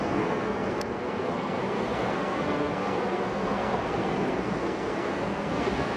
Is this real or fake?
fake